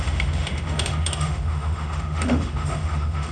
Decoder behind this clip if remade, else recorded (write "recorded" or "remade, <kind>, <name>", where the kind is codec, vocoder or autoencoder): remade, autoencoder, DAC-VAE